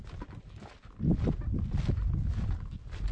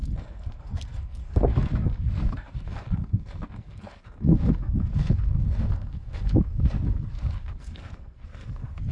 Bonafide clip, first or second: first